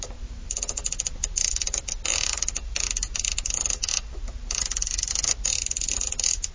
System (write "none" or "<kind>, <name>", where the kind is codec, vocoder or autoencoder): none